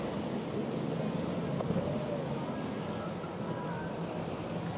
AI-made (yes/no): no